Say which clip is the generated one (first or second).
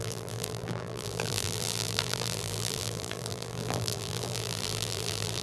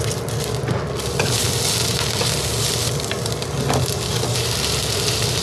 first